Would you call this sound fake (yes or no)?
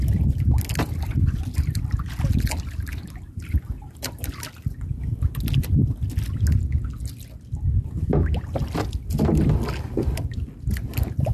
no